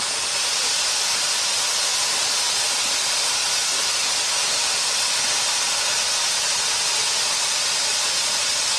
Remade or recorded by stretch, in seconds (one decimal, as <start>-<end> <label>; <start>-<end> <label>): 0.0-8.8 recorded